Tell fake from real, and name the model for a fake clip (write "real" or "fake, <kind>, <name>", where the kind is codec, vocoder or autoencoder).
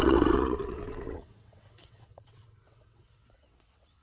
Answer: fake, vocoder, WaveNeXt